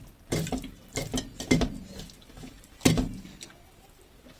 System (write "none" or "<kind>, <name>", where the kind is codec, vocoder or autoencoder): none